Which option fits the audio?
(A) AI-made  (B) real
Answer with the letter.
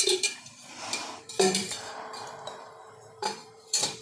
A